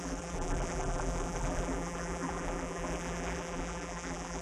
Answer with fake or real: fake